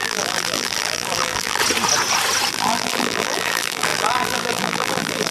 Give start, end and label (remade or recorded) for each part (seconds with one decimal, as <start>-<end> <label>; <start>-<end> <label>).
0.0-1.6 remade; 1.6-2.5 recorded; 2.5-5.3 remade